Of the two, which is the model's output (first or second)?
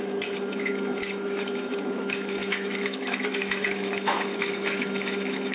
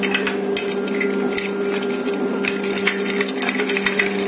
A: first